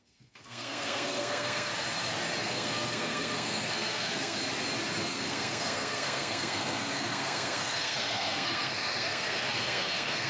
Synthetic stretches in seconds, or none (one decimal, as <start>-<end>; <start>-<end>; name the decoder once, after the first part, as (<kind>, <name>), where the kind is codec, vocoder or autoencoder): 0.0-1.7 (codec, SNAC); 2.4-4.4; 5.1-10.3